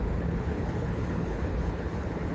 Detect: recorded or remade remade